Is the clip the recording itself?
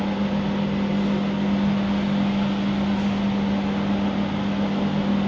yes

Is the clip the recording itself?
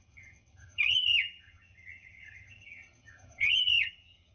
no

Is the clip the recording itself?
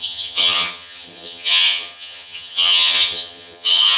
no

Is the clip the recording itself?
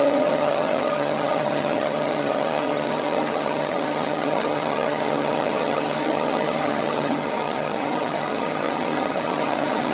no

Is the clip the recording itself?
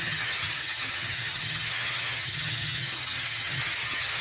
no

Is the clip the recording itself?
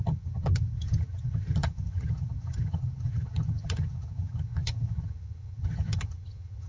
no